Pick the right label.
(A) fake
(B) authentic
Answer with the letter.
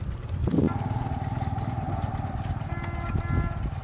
B